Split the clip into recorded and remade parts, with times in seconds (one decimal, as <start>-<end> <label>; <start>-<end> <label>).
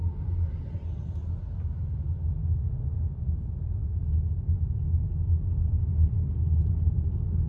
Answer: 0.0-7.5 recorded